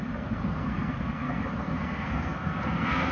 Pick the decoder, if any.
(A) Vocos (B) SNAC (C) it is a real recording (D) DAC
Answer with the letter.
B